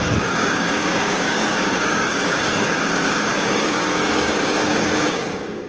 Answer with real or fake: fake